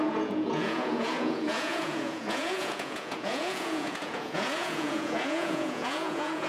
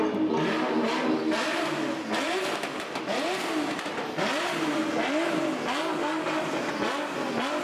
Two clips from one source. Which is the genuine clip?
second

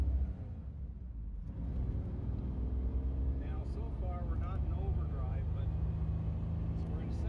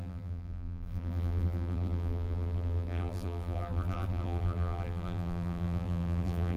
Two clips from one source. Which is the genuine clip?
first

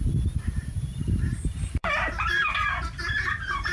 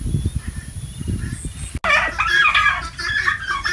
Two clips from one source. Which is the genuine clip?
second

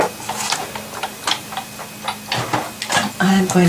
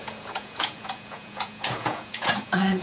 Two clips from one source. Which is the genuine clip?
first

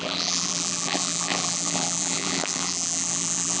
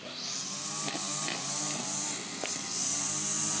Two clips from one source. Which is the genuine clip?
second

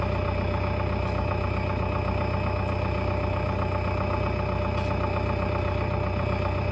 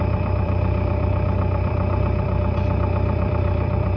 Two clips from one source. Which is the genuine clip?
first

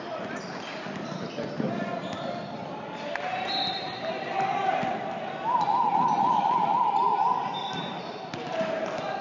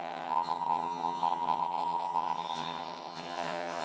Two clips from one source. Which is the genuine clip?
first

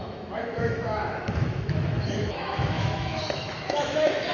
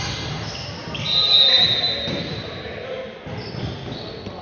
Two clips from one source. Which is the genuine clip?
second